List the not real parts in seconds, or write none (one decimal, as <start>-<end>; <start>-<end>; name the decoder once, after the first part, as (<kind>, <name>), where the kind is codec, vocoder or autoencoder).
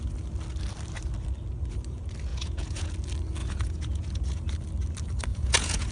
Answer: 2.3-2.9 (vocoder, Vocos); 3.4-4.5; 5.3-5.9